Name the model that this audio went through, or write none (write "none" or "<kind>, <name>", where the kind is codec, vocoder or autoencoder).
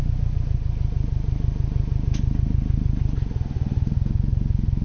none